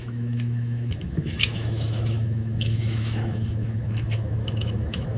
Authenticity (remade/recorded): remade